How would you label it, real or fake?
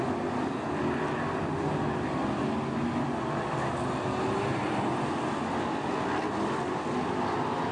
real